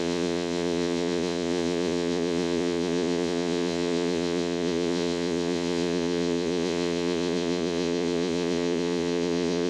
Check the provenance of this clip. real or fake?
fake